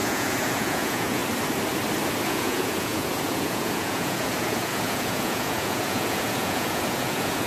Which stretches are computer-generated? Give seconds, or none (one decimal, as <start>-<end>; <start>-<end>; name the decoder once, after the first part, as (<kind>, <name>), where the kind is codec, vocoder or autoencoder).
0.0-1.2 (vocoder, Vocos); 2.3-7.5